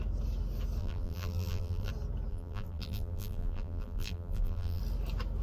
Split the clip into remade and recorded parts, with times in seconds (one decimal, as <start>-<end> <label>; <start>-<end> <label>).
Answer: 0.0-0.8 recorded; 0.8-1.9 remade; 1.9-2.3 recorded; 2.3-4.8 remade; 4.8-5.4 recorded